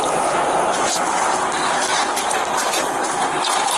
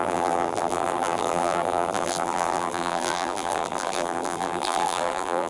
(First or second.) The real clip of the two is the first